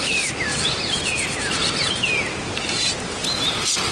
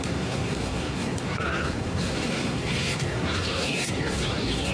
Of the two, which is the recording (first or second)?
first